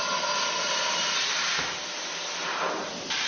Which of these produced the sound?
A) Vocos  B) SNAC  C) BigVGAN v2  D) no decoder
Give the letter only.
D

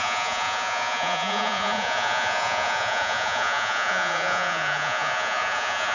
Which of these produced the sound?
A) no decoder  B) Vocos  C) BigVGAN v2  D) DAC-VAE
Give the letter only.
B